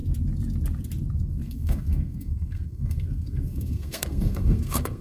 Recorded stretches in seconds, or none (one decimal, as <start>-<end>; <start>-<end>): 0.0-1.2